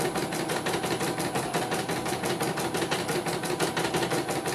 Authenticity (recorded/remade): recorded